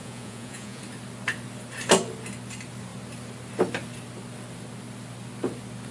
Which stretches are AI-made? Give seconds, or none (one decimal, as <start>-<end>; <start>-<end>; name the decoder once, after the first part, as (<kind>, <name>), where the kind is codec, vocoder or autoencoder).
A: 0.0-0.8 (vocoder, Vocos)